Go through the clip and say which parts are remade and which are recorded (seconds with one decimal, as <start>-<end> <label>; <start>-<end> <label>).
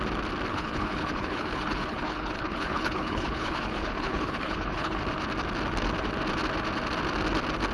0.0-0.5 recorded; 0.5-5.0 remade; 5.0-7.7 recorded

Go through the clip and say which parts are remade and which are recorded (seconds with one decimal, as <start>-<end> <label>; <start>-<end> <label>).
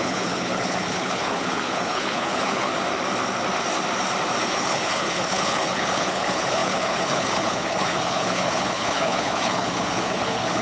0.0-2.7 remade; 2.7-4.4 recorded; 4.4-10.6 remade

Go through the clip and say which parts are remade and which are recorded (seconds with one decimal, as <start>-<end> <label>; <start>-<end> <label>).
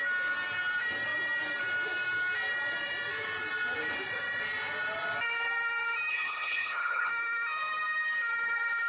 0.0-6.1 recorded; 6.1-7.1 remade; 7.1-8.9 recorded